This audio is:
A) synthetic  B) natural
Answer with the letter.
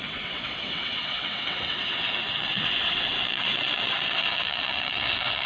A